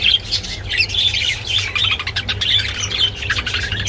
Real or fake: real